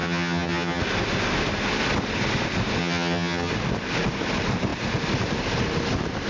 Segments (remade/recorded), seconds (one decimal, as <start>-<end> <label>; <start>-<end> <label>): 0.0-0.8 remade; 0.8-2.8 recorded; 2.8-3.5 remade; 3.5-6.3 recorded